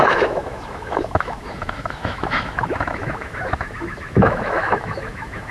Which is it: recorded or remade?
remade